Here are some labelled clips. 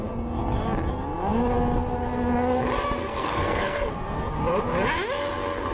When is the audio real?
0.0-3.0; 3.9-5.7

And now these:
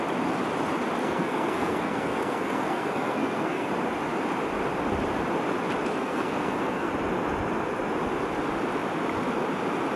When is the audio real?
0.0-1.0; 3.7-5.9; 6.9-10.0

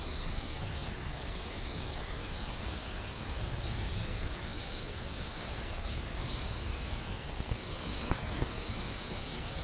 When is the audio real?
none

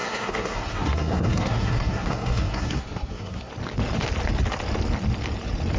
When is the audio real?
3.5-5.8

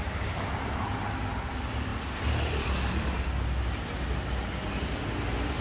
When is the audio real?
0.0-5.6